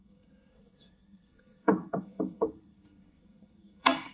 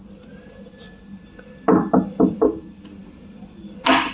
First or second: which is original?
second